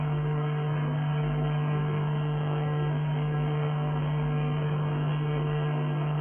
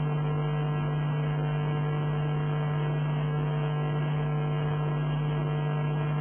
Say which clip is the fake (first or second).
first